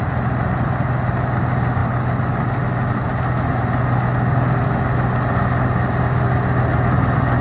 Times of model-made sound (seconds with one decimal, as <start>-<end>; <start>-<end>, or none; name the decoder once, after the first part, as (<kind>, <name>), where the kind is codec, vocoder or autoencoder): none